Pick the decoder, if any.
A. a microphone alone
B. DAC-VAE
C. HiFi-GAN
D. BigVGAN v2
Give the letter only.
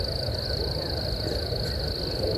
A